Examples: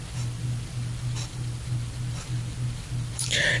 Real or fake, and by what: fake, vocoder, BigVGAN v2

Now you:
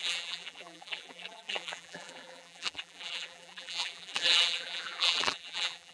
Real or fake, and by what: fake, vocoder, BigVGAN v2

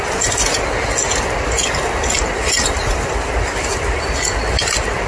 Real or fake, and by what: real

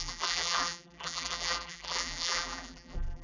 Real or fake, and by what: fake, vocoder, BigVGAN v2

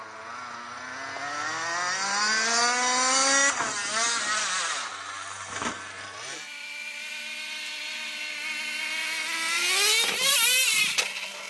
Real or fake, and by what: real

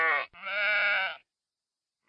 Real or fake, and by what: real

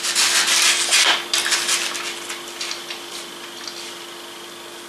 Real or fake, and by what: real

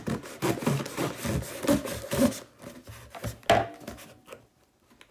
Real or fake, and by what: real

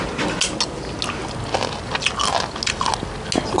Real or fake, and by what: real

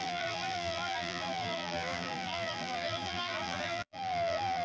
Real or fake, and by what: fake, vocoder, BigVGAN v2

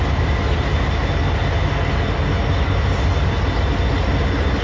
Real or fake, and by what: real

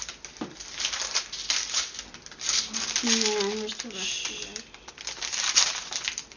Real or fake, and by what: real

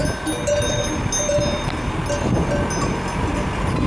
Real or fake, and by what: real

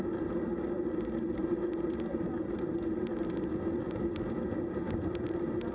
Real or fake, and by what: real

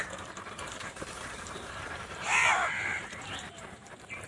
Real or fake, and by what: fake, vocoder, BigVGAN v2